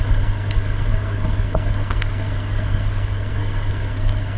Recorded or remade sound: remade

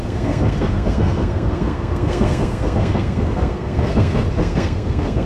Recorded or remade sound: remade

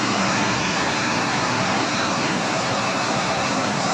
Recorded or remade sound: remade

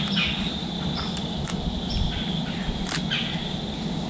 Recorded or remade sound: recorded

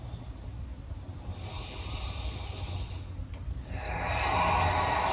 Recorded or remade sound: recorded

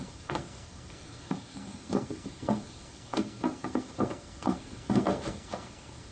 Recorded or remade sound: remade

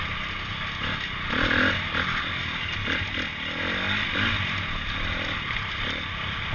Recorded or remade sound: recorded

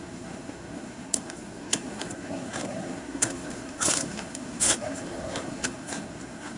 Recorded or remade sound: remade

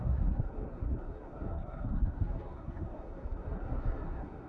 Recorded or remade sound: remade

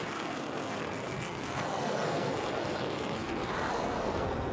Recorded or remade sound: remade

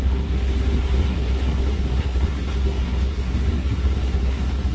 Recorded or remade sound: remade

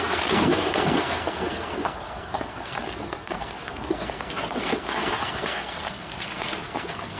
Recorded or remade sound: remade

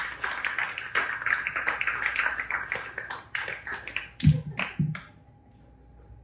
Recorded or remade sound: recorded